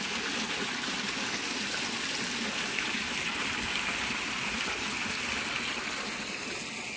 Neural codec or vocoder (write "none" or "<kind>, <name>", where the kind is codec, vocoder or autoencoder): none